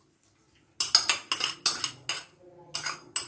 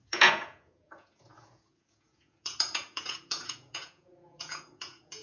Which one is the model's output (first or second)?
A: second